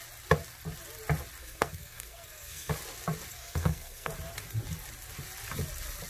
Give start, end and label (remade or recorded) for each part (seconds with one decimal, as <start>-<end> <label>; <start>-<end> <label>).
0.0-1.4 recorded; 1.4-2.7 remade; 2.7-3.3 recorded; 3.3-4.1 remade; 4.1-6.1 recorded